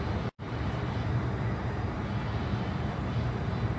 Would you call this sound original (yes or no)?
no